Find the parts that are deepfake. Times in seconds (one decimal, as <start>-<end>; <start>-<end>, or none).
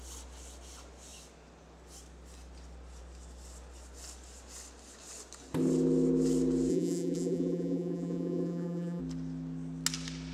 6.7-9.0